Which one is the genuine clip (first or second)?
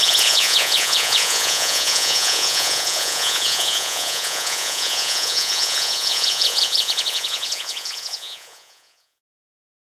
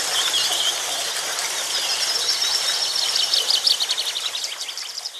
second